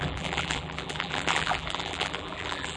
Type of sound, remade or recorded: remade